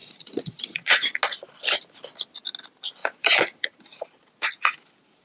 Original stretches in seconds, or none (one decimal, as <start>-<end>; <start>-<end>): 1.2-3.0; 3.8-5.2